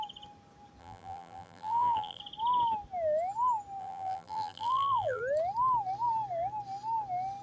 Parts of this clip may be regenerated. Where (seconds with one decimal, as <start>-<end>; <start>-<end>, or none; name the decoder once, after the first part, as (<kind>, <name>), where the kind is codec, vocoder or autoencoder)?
0.8-2.2 (vocoder, BigVGAN v2); 3.8-5.2